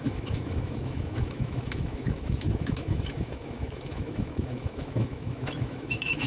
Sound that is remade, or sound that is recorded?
remade